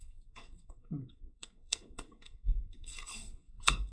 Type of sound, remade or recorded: remade